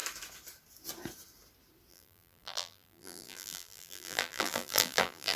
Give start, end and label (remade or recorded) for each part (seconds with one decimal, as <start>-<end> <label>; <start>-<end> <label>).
0.0-1.9 recorded; 1.9-5.4 remade

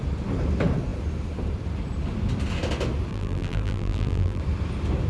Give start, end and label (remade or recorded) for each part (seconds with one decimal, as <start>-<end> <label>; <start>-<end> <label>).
0.0-3.1 recorded; 3.1-4.4 remade; 4.4-5.1 recorded

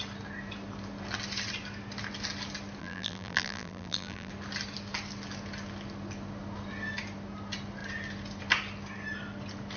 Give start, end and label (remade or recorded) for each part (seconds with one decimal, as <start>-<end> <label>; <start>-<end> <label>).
0.0-2.8 recorded; 2.8-4.3 remade; 4.3-9.8 recorded

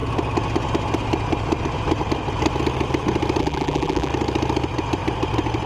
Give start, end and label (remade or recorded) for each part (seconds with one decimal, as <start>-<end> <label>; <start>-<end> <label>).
0.0-3.4 recorded; 3.4-4.1 remade; 4.1-5.7 recorded

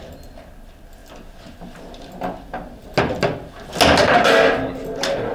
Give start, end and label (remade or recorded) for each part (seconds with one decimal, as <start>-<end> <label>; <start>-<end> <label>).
0.0-5.3 recorded